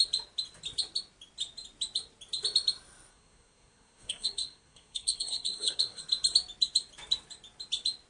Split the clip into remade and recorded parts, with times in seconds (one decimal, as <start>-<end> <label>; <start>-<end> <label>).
0.0-3.1 recorded; 3.1-6.0 remade; 6.0-8.1 recorded